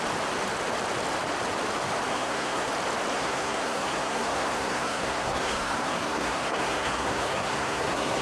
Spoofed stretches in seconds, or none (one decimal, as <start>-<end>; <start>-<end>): 2.1-2.7; 3.1-8.2